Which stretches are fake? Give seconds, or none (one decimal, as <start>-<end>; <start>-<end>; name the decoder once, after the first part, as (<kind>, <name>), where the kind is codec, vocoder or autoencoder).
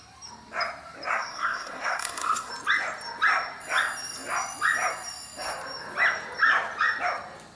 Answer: 1.1-2.5 (codec, SNAC)